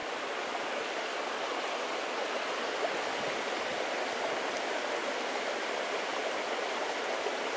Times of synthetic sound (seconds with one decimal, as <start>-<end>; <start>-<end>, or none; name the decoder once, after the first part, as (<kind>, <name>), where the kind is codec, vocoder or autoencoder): none